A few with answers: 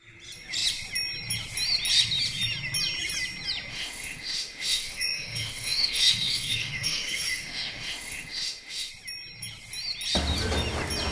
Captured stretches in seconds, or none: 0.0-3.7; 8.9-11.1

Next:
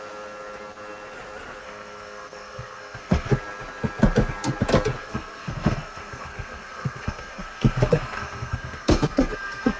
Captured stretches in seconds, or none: 0.0-1.6; 3.3-5.0

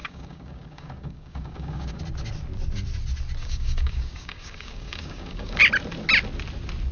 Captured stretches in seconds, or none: 2.0-3.4; 5.6-6.9

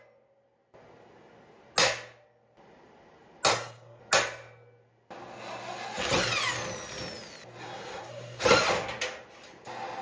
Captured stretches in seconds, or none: 0.0-3.5; 4.0-7.6; 8.4-10.0

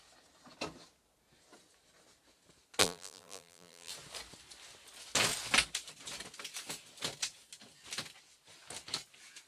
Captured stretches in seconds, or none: 0.0-2.8; 3.9-9.5